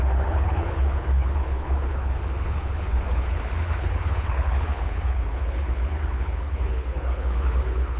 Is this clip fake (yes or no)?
yes